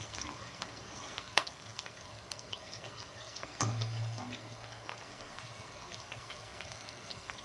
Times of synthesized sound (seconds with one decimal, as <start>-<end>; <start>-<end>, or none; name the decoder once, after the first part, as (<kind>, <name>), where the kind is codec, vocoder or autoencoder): 0.0-7.4 (codec, SNAC)